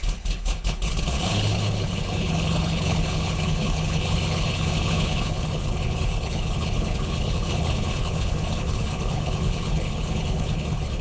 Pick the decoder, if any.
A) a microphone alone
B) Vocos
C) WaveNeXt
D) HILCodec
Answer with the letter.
D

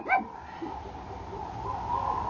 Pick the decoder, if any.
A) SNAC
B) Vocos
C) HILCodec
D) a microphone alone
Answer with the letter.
D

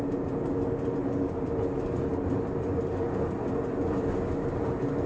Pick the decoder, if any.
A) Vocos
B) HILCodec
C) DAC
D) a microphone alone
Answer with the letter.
D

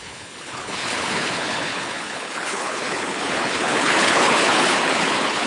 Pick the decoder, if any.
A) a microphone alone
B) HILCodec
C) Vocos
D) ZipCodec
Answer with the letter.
B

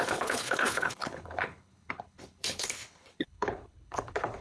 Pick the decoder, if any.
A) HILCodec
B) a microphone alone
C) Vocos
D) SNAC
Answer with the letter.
A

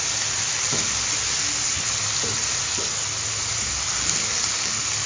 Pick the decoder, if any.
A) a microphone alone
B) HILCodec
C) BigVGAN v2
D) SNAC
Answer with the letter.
A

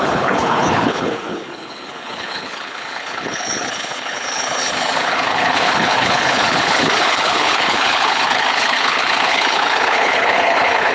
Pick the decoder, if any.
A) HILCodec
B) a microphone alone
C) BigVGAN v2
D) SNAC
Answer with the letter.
A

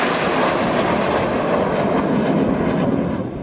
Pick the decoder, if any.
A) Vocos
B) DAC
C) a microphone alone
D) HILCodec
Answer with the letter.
C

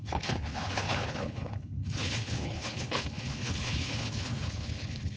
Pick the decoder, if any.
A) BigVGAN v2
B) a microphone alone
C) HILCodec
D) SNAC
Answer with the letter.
C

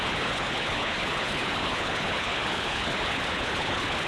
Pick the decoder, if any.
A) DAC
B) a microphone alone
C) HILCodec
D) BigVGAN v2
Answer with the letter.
C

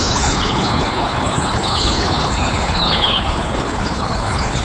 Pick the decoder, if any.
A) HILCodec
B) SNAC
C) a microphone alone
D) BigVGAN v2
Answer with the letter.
A